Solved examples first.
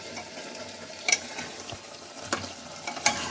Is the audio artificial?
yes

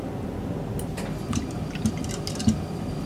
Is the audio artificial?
no